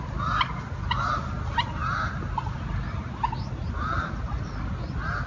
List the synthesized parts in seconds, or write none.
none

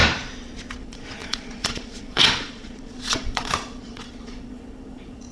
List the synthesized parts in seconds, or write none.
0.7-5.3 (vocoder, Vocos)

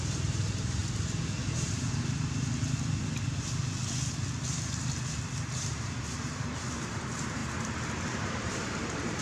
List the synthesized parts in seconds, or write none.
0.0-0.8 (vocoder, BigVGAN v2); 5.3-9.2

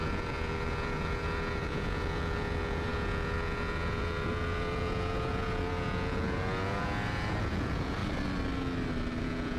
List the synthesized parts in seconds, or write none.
0.0-8.0 (vocoder, Vocos); 9.2-9.6

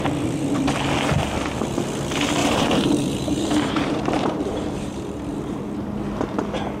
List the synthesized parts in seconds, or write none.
2.4-5.6 (vocoder, BigVGAN v2)

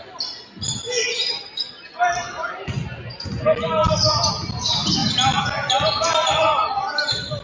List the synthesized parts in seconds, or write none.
none

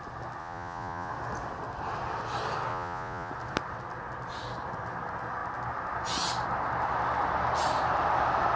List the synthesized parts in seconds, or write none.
0.4-1.1 (vocoder, Vocos); 2.7-3.3